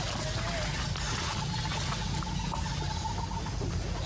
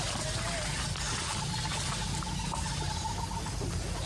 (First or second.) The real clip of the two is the first